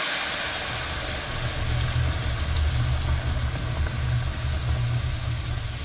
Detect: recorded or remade recorded